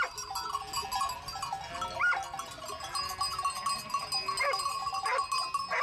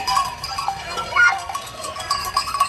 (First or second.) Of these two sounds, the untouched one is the first